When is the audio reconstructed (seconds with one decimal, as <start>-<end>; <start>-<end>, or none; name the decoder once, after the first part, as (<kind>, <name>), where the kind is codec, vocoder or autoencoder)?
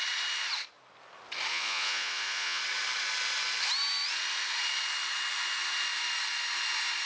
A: 1.5-2.6 (vocoder, Vocos)